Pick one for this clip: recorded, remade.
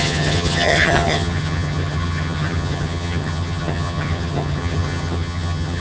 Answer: remade